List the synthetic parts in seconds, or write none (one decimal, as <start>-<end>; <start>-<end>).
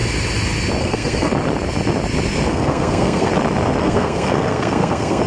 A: 0.8-1.3; 2.5-3.3; 3.8-5.3